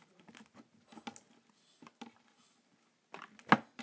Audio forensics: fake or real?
real